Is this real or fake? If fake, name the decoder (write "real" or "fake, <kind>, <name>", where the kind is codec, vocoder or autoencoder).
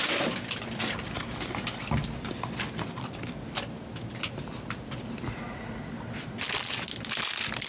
fake, vocoder, BigVGAN v2